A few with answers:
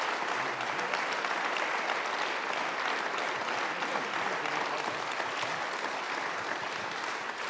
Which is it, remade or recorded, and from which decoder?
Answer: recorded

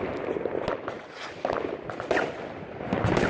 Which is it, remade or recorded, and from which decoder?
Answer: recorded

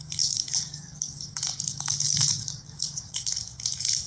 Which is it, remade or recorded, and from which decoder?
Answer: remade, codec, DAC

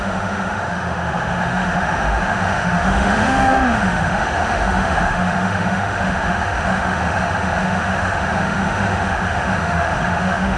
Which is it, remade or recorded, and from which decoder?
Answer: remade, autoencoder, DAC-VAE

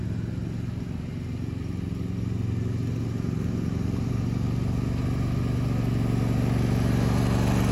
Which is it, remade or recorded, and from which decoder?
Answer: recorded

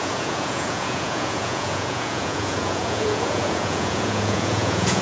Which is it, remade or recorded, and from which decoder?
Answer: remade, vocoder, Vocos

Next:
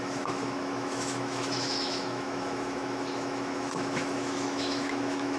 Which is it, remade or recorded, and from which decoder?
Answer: remade, autoencoder, DAC-VAE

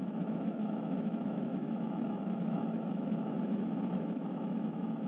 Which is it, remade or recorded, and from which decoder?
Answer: remade, autoencoder, DAC-VAE